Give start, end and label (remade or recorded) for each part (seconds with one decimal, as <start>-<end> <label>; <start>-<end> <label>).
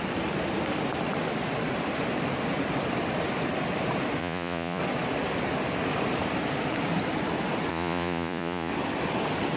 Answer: 0.0-4.2 recorded; 4.2-4.8 remade; 4.8-7.7 recorded; 7.7-8.7 remade; 8.7-9.6 recorded